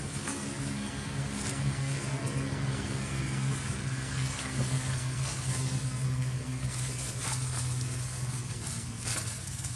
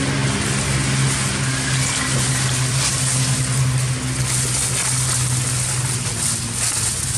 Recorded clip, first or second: second